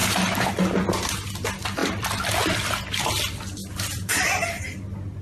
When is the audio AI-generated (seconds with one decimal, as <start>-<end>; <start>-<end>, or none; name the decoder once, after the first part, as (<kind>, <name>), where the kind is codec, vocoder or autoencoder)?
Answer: 1.8-2.6 (vocoder, BigVGAN v2); 3.6-4.6